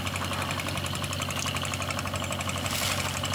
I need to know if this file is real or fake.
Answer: real